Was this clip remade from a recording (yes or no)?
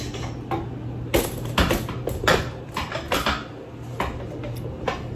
no